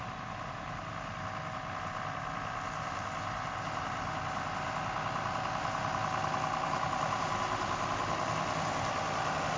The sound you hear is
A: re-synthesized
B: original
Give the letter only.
B